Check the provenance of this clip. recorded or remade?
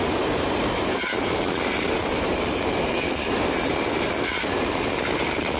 remade